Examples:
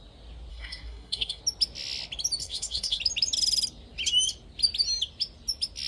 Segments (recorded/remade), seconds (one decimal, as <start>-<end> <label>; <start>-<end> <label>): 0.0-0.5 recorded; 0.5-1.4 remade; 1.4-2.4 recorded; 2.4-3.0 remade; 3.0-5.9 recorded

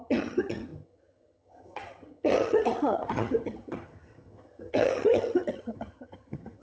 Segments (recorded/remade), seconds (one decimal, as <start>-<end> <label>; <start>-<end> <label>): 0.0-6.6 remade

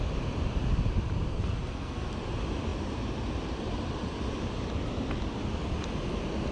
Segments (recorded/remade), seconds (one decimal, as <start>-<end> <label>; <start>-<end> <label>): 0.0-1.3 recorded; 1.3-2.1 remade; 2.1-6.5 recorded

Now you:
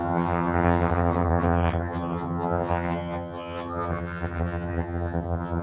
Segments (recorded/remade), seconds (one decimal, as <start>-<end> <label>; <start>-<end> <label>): 0.0-5.6 remade

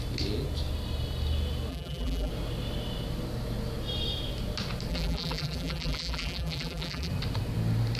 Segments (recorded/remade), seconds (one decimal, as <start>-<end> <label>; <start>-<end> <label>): 0.0-1.7 recorded; 1.7-2.3 remade; 2.3-4.9 recorded; 4.9-7.1 remade; 7.1-8.0 recorded

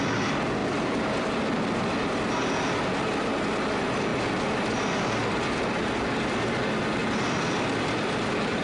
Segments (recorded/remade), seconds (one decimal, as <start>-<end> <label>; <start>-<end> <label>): 0.0-0.6 recorded; 0.6-2.3 remade; 2.3-4.1 recorded; 4.1-5.4 remade; 5.4-7.0 recorded; 7.0-8.6 remade

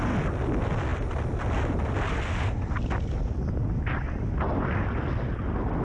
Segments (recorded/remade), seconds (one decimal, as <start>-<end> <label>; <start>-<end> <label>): 0.0-5.8 recorded

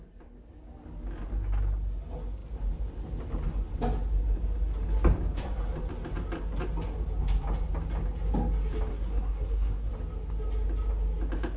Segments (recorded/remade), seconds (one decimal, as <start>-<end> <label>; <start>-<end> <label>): 0.0-8.9 recorded; 8.9-9.9 remade; 9.9-11.6 recorded